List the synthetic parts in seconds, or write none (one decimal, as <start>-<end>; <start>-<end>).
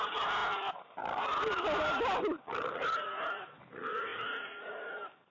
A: none